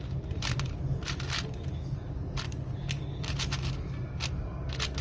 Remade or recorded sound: recorded